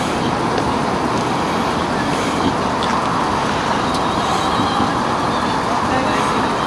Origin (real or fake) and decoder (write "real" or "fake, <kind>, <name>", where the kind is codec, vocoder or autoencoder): fake, vocoder, BigVGAN v2